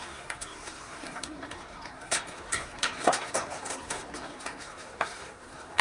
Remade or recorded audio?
remade